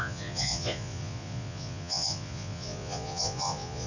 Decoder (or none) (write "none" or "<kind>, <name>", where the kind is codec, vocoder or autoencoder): vocoder, Vocos